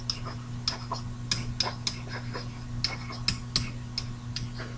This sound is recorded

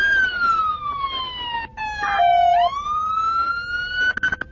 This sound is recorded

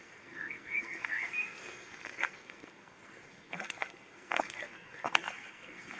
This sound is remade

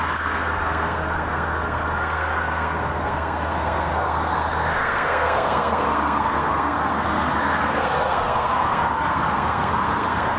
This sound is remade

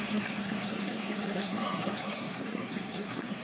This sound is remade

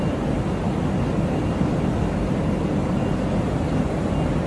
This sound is recorded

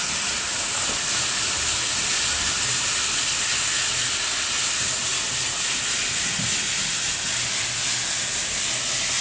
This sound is recorded